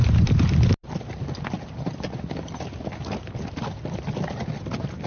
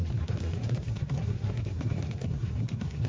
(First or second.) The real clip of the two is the first